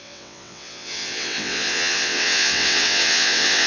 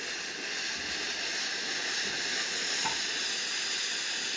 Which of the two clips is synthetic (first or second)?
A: first